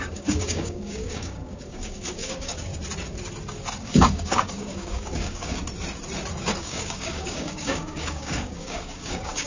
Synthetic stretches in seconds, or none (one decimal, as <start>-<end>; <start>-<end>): 0.0-2.7; 3.8-5.6; 6.6-9.5